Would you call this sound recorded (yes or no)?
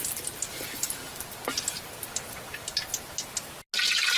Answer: yes